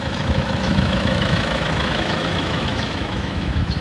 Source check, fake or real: fake